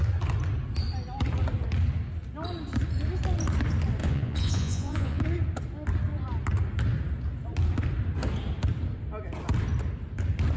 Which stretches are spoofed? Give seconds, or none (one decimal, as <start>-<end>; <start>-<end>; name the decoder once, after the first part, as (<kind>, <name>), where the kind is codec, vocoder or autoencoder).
4.0-5.2 (vocoder, Vocos)